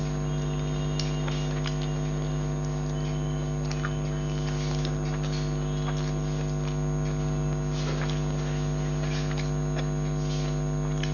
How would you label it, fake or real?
real